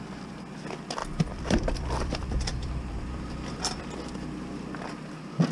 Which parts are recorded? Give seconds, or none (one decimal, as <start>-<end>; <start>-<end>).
0.0-1.0; 3.8-5.5